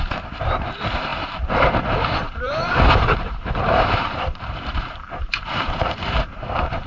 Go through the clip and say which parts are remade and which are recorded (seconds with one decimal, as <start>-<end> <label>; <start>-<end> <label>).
0.0-6.9 remade